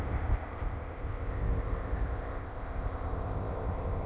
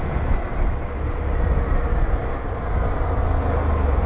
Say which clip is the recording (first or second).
second